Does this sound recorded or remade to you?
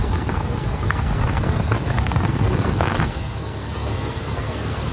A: remade